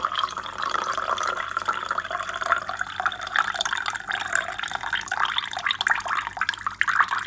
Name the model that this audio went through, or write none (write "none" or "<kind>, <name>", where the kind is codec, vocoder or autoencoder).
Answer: vocoder, BigVGAN v2